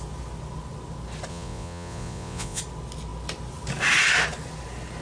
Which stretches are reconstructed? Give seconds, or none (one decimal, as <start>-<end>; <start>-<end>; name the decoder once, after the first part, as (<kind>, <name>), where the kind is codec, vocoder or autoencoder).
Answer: 1.3-2.6 (vocoder, Vocos)